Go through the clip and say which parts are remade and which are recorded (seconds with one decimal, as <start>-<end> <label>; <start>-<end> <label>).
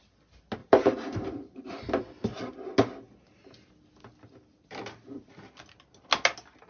0.0-0.6 recorded; 0.6-1.8 remade; 1.8-6.7 recorded